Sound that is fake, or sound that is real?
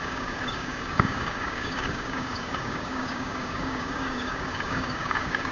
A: fake